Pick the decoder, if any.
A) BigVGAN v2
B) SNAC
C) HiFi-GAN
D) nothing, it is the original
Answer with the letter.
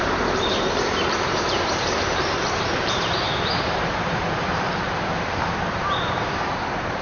A